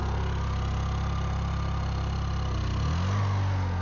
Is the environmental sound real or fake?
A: real